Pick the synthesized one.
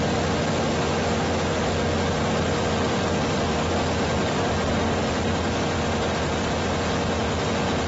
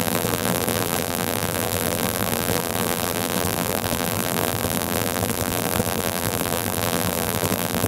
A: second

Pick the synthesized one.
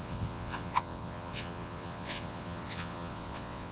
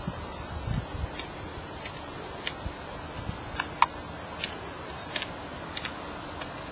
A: first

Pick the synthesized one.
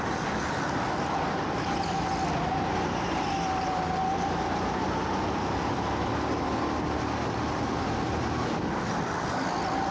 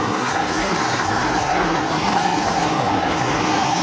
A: second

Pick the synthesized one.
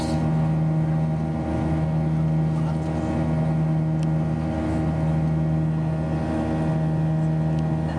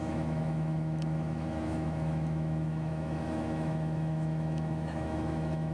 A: second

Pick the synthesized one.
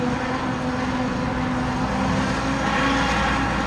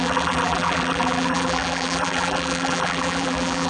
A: second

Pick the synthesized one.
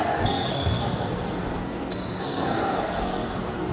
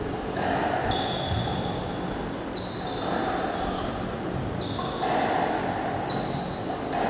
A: first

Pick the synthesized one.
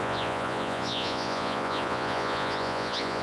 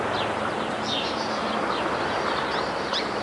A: first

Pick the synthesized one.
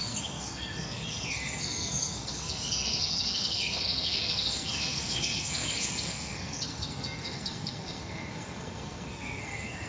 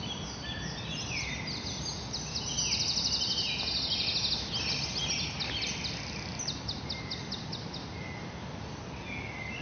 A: first